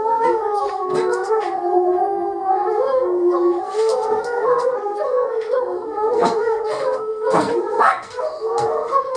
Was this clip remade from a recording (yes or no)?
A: yes